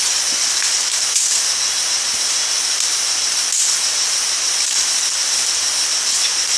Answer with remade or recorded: recorded